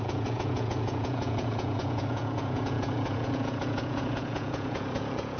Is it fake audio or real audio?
fake